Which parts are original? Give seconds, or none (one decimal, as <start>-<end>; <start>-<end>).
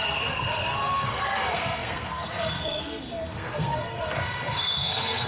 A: none